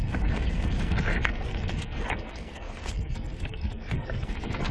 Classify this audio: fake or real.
fake